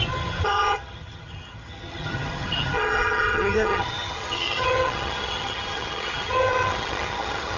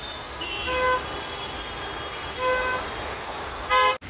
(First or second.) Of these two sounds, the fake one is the first